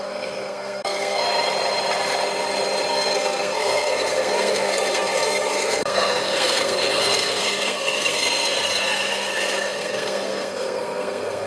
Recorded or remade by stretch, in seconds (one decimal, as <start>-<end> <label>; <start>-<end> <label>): 0.0-1.2 remade; 1.2-2.9 recorded; 2.9-11.5 remade